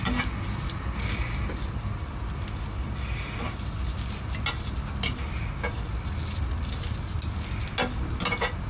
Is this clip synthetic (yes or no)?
no